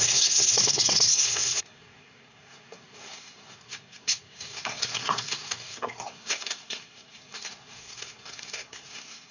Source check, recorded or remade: remade